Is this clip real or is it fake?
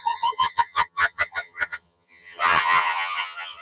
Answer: fake